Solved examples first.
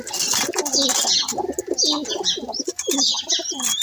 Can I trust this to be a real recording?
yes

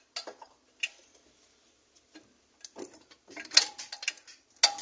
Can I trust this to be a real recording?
yes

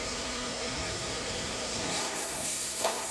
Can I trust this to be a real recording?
no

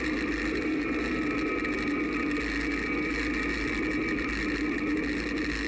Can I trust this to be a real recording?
yes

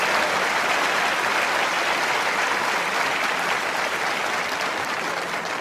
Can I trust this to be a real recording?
yes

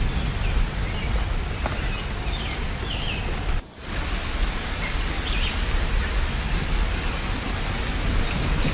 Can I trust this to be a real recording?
yes